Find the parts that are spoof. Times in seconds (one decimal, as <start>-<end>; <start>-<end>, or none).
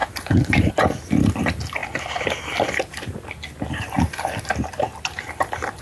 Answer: 0.0-0.7